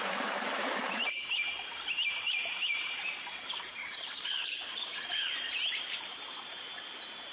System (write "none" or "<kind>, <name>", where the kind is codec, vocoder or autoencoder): vocoder, BigVGAN v2